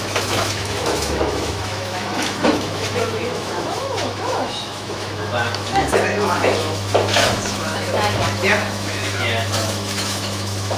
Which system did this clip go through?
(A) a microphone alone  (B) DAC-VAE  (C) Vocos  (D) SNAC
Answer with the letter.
B